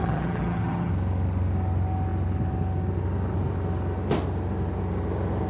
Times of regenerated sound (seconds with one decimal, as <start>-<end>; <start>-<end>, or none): 0.0-0.9